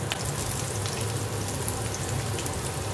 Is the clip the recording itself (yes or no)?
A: no